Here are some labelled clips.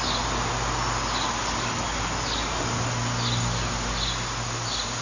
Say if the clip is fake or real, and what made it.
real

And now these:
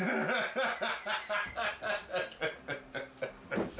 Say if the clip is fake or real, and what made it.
real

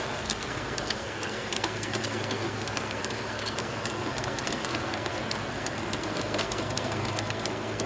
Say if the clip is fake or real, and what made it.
fake, codec, SNAC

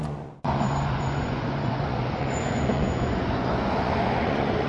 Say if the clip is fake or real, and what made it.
fake, vocoder, Vocos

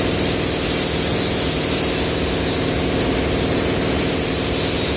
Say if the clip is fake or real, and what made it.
real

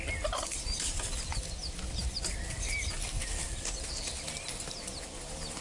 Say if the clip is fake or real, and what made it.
real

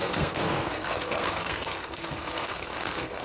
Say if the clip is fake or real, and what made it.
fake, codec, SNAC